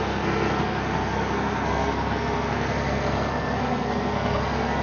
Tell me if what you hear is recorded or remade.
remade